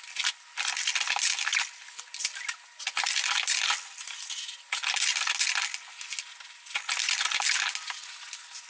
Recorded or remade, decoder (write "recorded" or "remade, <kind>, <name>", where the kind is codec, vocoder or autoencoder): recorded